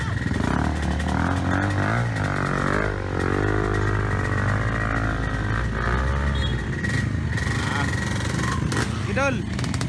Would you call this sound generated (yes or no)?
no